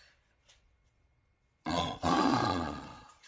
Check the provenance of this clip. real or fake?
fake